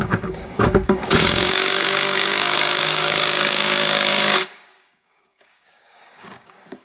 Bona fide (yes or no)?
no